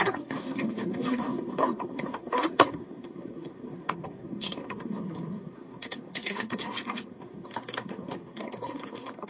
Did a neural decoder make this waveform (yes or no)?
yes